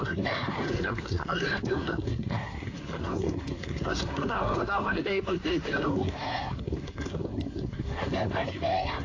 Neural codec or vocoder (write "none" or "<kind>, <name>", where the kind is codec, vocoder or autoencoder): codec, SNAC